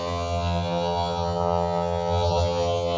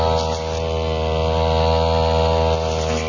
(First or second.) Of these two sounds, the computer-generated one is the first